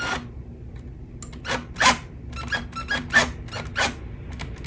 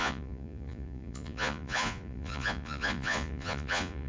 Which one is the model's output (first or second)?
second